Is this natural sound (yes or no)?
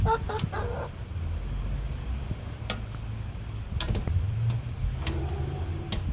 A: yes